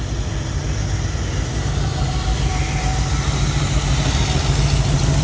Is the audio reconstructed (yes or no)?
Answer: no